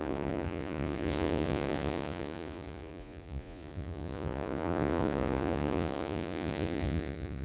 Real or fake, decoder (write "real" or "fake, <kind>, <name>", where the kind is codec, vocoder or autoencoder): fake, vocoder, Vocos